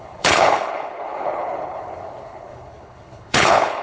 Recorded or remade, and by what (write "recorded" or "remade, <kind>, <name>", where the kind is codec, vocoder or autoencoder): remade, codec, HILCodec